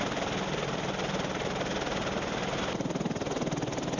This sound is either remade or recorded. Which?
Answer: recorded